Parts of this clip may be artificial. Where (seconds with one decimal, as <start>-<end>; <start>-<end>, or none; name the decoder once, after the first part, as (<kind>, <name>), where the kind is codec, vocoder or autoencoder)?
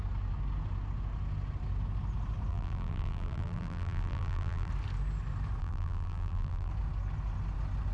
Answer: 2.5-4.7 (vocoder, BigVGAN v2); 5.6-6.7